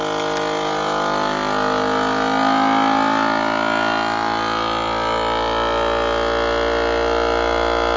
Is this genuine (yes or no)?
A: yes